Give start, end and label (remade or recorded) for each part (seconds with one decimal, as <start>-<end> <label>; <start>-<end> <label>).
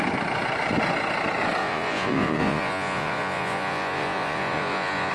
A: 0.0-1.6 recorded; 1.6-5.1 remade